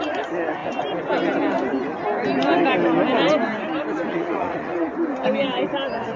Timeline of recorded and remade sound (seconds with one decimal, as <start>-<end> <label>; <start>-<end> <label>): 0.0-4.1 recorded; 4.1-4.9 remade; 4.9-6.2 recorded